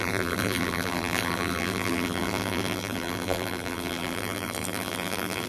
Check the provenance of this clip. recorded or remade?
remade